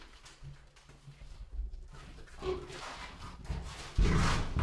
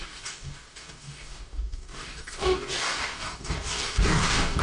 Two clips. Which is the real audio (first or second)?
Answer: first